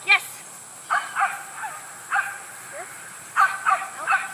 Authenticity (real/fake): real